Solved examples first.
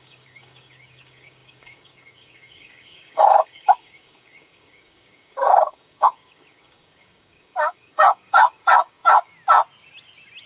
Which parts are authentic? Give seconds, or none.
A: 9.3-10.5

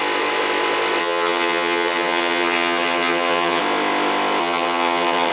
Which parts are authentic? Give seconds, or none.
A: 0.0-1.0; 3.6-4.4

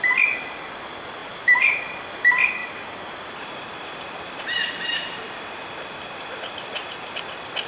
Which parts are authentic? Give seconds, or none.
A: 0.0-1.2; 1.8-2.6; 7.2-7.7